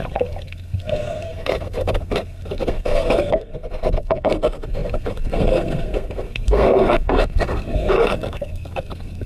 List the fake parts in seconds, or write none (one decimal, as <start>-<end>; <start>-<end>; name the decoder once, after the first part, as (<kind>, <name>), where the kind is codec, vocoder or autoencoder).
0.0-9.3 (codec, SNAC)